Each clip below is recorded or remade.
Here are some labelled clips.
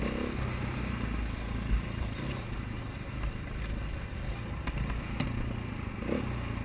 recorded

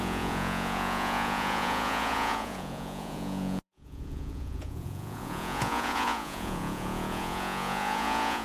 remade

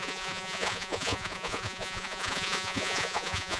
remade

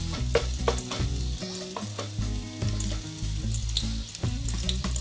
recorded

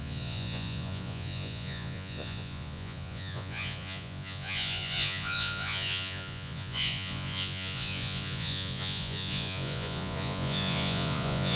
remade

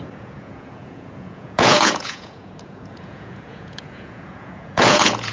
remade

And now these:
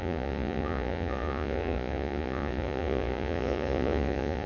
remade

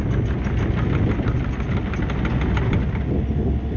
recorded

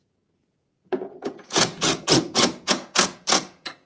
remade